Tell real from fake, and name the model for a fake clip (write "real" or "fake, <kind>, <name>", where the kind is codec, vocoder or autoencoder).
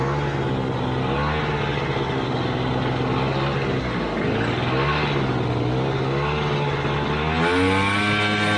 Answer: real